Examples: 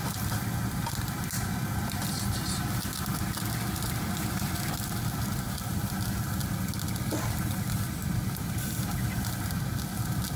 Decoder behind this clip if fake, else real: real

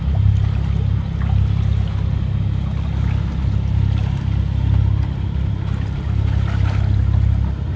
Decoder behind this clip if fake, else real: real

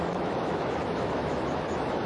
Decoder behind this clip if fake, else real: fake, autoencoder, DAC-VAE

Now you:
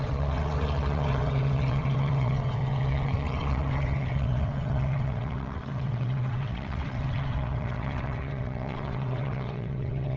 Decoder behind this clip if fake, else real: fake, vocoder, WaveNeXt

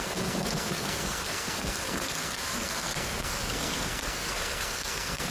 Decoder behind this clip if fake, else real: fake, codec, SNAC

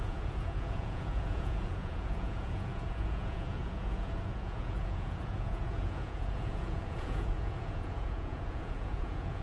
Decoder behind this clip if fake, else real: fake, vocoder, Vocos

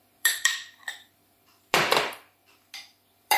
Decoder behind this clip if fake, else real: fake, vocoder, BigVGAN v2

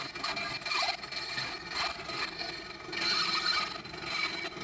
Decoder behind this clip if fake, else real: real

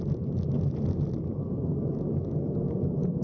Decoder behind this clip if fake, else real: real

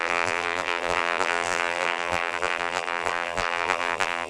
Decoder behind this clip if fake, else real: fake, vocoder, BigVGAN v2